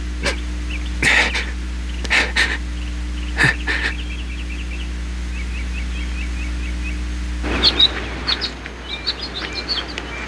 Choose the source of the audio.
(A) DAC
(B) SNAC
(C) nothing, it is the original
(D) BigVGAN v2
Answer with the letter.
C